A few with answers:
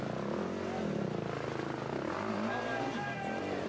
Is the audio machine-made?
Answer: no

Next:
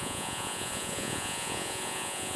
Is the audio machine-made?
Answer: yes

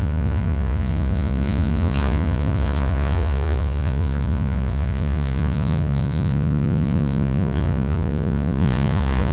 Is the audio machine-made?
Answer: yes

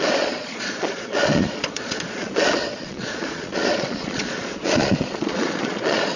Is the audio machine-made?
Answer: yes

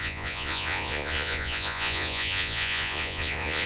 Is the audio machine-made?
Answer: yes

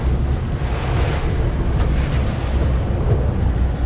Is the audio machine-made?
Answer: no